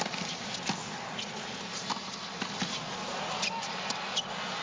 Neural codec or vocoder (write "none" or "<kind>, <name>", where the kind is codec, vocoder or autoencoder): none